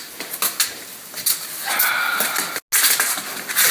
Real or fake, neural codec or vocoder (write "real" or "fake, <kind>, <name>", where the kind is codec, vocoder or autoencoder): real